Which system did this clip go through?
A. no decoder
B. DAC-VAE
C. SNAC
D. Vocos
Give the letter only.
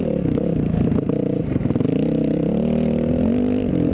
A